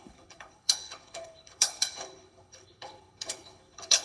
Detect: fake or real fake